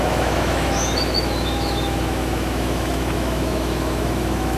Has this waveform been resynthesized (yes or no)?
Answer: yes